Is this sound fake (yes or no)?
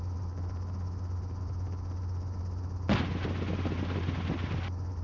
no